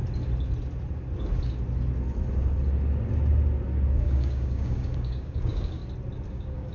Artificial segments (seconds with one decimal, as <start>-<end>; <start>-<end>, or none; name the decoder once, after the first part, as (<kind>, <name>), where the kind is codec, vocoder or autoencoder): 4.0-5.8 (codec, DAC); 6.3-6.7